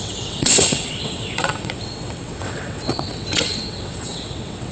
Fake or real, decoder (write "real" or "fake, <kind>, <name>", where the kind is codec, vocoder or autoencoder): fake, vocoder, WaveNeXt